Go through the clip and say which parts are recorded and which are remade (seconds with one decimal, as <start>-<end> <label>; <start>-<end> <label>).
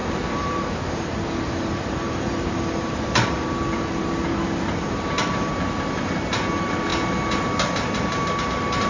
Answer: 0.0-4.1 remade; 4.1-8.9 recorded